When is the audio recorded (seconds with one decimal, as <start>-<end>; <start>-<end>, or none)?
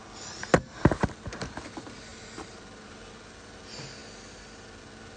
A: 0.0-2.1; 3.1-5.2